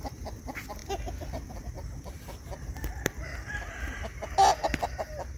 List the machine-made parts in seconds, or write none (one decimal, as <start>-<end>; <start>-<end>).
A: none